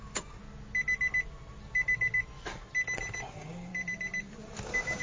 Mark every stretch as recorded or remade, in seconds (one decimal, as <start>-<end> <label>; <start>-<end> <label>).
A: 0.0-0.4 remade; 0.4-3.3 recorded; 3.3-3.7 remade; 3.7-4.6 recorded; 4.6-5.0 remade